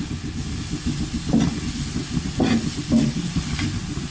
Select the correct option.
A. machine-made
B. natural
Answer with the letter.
B